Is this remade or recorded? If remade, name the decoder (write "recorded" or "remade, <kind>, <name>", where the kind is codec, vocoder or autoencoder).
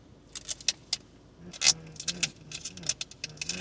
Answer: recorded